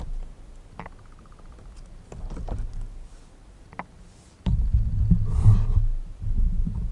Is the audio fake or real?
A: real